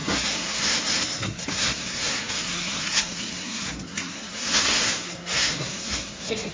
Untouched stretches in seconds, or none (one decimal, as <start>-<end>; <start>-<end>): none